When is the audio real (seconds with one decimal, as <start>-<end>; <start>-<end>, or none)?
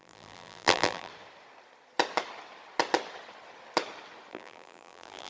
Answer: 1.1-4.3